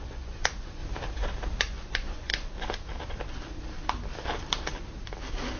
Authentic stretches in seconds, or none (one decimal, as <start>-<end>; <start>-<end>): 0.8-1.6; 2.3-5.6

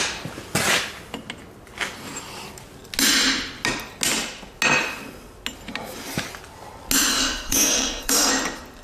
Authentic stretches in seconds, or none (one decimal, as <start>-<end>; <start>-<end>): 0.0-7.1; 8.3-8.8

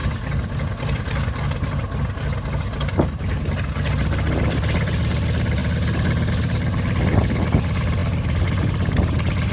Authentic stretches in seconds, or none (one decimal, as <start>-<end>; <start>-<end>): 0.0-9.5